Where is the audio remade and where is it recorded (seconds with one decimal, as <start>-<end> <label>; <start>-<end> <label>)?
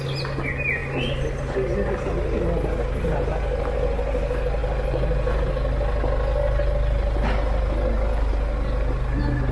0.0-9.5 recorded